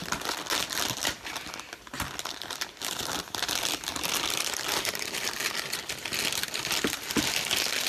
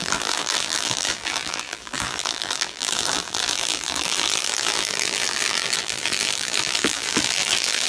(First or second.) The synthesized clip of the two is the second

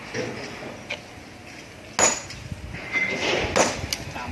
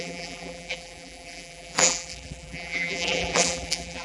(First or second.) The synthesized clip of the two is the second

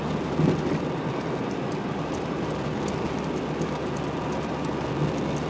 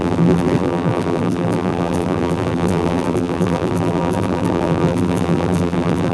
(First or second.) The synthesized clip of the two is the second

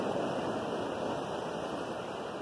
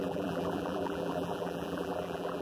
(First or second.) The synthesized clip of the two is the second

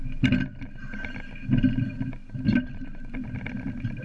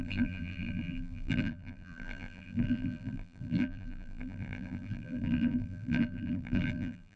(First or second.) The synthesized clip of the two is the second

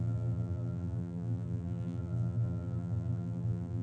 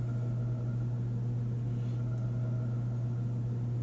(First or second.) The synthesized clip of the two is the first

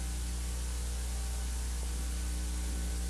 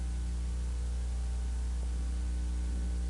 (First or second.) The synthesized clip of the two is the second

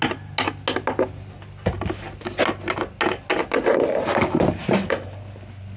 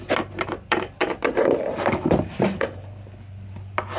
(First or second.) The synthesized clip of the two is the second